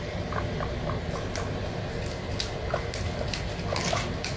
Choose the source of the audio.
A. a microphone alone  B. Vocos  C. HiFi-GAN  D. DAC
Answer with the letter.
A